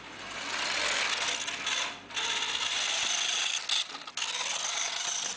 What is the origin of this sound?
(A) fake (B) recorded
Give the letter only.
B